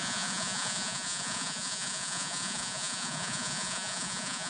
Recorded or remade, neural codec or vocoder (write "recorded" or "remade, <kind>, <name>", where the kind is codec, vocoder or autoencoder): remade, vocoder, Vocos